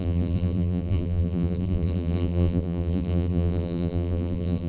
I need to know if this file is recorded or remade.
remade